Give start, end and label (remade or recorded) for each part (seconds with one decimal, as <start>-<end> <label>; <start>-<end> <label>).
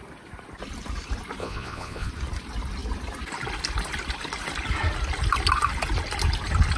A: 0.0-1.4 recorded; 1.4-2.1 remade; 2.1-6.8 recorded